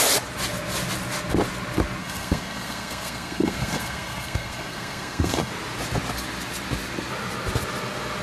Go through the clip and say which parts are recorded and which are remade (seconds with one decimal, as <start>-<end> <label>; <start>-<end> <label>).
0.0-2.0 recorded; 2.0-5.5 remade; 5.5-8.2 recorded